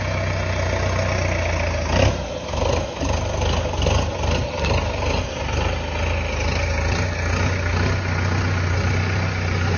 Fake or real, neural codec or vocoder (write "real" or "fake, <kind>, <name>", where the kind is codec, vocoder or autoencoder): real